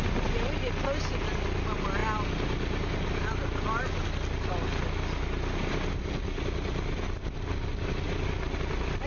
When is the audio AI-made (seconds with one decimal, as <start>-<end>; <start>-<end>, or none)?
none